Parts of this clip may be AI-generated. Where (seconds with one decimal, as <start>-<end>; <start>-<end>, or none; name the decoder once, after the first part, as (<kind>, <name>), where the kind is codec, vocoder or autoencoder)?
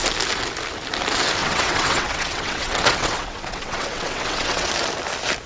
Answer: 1.4-4.7 (vocoder, WaveNeXt)